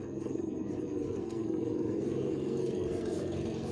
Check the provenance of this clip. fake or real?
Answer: fake